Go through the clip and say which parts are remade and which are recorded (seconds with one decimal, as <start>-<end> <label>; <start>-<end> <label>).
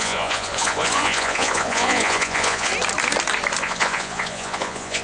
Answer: 0.0-2.7 remade; 2.7-3.6 recorded; 3.6-5.0 remade